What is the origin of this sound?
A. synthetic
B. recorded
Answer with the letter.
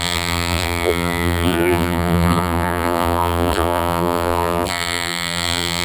A